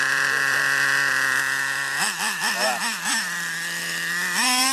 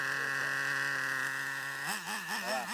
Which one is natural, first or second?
second